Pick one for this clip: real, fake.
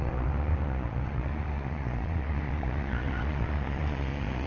fake